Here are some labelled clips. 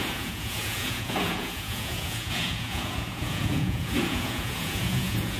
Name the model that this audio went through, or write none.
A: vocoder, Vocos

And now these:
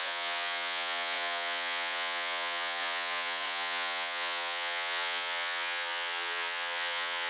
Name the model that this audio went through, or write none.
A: vocoder, Vocos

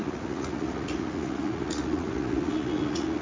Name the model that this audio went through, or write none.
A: vocoder, Vocos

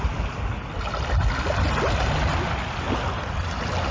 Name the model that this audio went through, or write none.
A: none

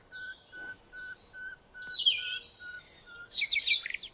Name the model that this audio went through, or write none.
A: none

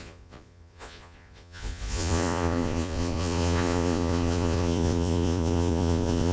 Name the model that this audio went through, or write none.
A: vocoder, Vocos